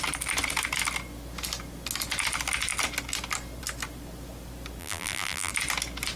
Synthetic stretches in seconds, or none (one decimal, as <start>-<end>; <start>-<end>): 4.8-5.5